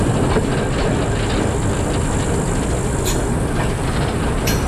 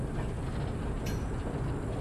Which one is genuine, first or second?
second